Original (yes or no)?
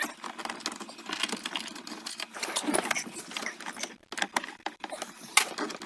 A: yes